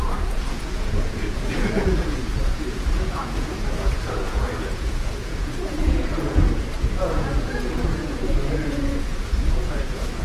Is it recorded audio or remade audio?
remade